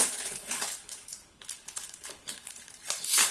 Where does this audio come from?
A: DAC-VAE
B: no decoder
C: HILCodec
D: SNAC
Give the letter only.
C